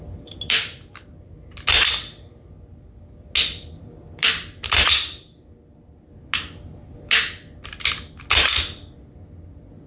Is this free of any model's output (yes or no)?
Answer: yes